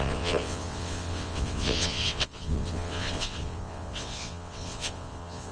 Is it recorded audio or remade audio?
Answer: remade